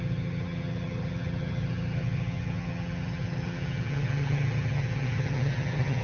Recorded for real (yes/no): no